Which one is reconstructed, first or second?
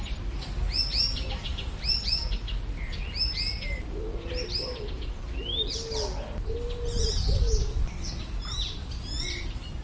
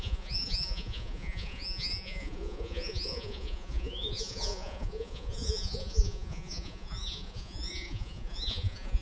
second